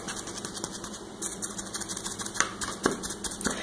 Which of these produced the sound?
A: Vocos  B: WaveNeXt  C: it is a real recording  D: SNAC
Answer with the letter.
C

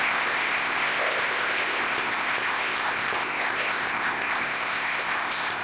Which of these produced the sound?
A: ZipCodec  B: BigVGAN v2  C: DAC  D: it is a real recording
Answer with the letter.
A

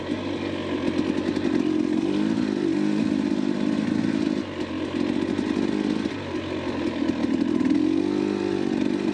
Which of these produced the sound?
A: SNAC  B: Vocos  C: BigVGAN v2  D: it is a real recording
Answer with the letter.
D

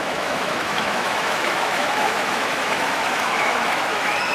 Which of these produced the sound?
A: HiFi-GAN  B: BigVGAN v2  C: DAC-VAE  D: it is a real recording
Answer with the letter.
C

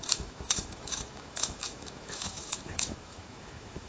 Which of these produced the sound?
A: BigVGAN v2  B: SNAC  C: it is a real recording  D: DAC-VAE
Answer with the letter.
D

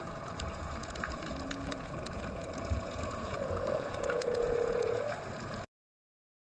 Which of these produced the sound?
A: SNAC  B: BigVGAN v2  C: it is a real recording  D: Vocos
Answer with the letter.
D